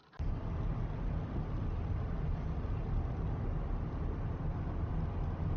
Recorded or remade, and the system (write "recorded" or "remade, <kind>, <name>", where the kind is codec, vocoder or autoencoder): recorded